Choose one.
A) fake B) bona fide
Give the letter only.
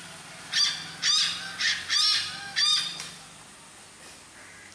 B